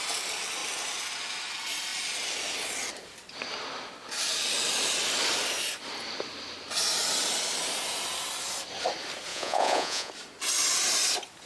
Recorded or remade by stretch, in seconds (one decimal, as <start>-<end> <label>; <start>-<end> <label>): 0.0-9.3 recorded; 9.3-10.1 remade; 10.1-11.5 recorded